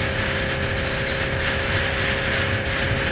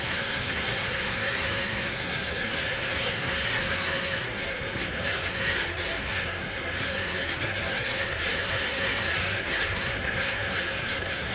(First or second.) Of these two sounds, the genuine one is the first